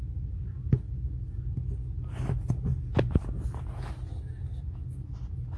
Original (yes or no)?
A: yes